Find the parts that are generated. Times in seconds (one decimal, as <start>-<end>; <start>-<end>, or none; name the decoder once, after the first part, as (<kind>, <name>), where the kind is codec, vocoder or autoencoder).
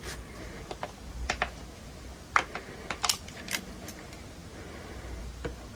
none